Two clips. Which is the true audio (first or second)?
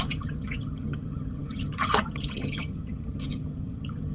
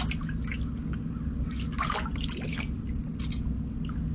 second